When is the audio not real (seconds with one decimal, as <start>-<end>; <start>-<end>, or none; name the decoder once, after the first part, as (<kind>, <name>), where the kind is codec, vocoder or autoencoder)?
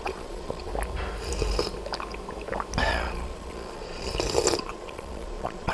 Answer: 0.0-0.7 (vocoder, Vocos); 2.9-4.1; 4.6-5.7